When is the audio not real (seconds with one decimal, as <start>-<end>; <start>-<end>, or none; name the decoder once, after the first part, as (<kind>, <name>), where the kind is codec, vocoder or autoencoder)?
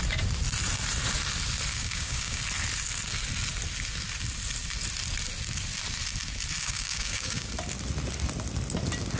1.7-2.4 (codec, DAC); 6.6-7.5